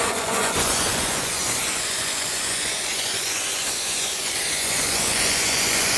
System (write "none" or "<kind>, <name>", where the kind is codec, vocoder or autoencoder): vocoder, Vocos